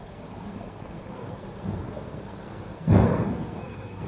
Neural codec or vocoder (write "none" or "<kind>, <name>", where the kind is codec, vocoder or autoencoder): codec, SNAC